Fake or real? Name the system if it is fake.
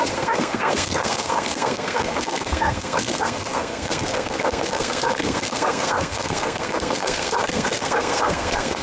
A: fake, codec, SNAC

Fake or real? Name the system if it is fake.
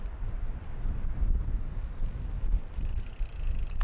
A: real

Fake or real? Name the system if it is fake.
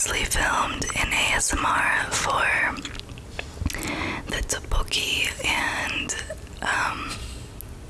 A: real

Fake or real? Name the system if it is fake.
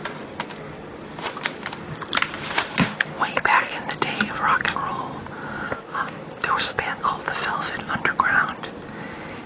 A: real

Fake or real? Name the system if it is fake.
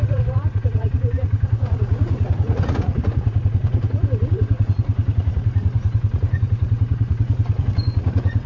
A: fake, vocoder, Vocos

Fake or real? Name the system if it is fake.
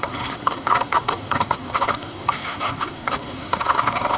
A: fake, codec, SNAC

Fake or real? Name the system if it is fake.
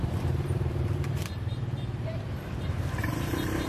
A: fake, vocoder, BigVGAN v2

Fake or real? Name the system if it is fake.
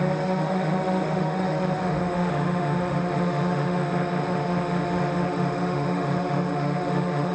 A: fake, autoencoder, DAC-VAE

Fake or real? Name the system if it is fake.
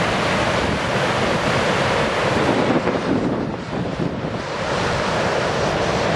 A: fake, vocoder, BigVGAN v2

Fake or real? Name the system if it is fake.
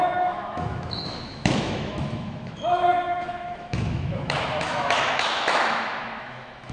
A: fake, autoencoder, DAC-VAE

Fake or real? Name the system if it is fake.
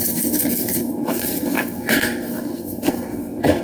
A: fake, codec, SNAC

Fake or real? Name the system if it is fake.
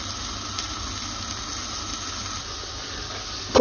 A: real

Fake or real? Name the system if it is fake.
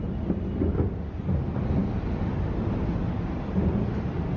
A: real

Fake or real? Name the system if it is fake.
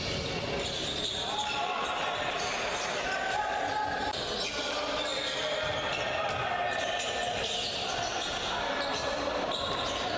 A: real